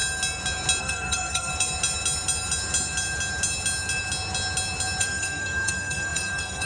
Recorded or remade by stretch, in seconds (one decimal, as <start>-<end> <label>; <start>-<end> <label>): 0.0-0.8 recorded; 0.8-1.5 remade; 1.5-5.0 recorded; 5.0-6.7 remade